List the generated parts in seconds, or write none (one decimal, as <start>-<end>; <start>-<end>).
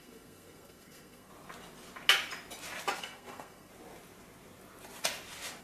0.0-1.3; 3.0-3.7